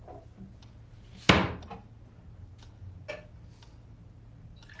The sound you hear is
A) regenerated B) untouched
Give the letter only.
B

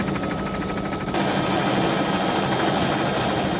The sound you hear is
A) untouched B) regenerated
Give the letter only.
A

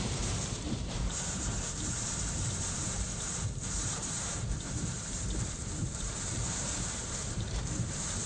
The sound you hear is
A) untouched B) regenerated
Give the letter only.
B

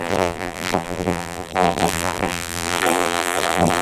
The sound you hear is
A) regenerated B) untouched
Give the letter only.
A